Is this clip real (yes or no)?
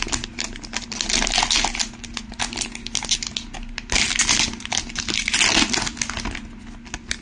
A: yes